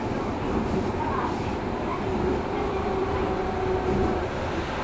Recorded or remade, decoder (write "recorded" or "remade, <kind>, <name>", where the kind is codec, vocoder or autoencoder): recorded